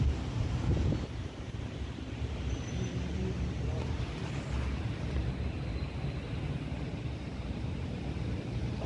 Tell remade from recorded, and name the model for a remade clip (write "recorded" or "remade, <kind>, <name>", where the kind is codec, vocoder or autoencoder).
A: remade, vocoder, BigVGAN v2